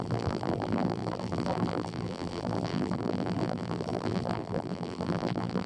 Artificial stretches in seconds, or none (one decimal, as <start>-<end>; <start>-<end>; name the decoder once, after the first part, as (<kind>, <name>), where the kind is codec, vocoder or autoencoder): 0.0-5.7 (vocoder, BigVGAN v2)